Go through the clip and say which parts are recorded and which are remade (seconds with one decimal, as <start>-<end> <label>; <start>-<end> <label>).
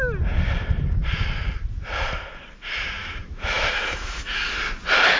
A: 0.0-3.0 recorded; 3.0-4.5 remade; 4.5-5.2 recorded